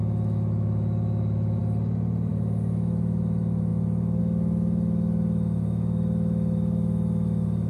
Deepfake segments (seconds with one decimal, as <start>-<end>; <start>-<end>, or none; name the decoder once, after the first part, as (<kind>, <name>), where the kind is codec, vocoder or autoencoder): 0.0-1.6 (autoencoder, DAC-VAE); 2.3-7.7